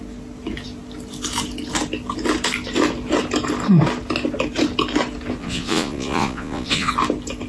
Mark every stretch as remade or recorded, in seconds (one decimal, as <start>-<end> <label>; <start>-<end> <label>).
0.0-5.4 recorded; 5.4-6.9 remade; 6.9-7.5 recorded